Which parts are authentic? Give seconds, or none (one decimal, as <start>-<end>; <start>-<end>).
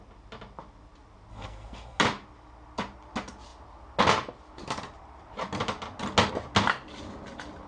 0.0-1.3; 2.0-7.7